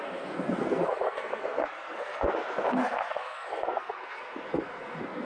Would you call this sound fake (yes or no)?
yes